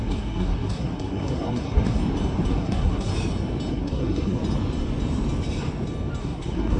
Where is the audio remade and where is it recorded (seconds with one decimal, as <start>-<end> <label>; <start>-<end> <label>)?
0.0-2.0 remade; 2.0-2.5 recorded; 2.5-3.1 remade; 3.1-3.7 recorded; 3.7-4.4 remade; 4.4-6.2 recorded; 6.2-6.8 remade